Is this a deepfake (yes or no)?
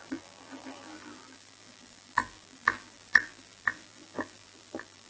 yes